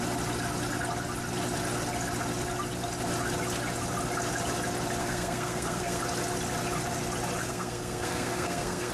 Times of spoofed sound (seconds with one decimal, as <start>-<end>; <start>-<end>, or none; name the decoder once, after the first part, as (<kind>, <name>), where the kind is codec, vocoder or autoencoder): 5.0-6.0 (codec, SNAC); 7.4-8.9